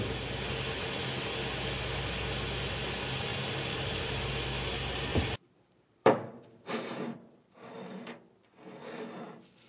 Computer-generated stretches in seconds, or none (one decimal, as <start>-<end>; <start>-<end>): 3.3-4.3; 5.1-8.0

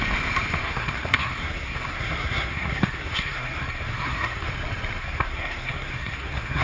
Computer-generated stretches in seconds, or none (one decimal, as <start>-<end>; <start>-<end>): 0.6-4.5; 5.0-6.6